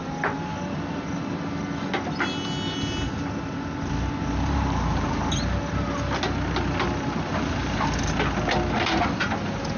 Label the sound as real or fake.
real